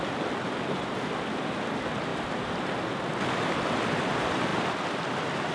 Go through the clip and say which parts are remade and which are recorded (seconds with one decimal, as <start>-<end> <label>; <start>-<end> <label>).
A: 0.0-5.5 recorded